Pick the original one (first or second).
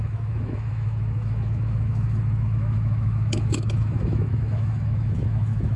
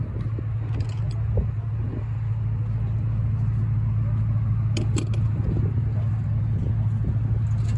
second